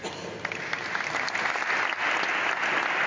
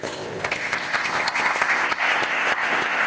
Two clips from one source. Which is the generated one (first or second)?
second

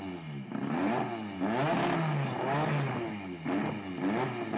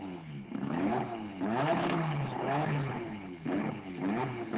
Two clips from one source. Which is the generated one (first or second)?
second